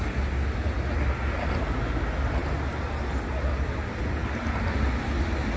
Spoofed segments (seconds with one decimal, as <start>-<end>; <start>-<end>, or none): none